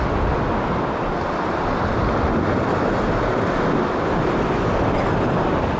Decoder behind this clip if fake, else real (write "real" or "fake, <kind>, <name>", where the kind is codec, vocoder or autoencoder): real